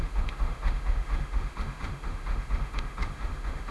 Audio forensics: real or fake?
fake